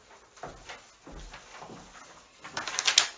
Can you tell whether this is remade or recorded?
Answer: recorded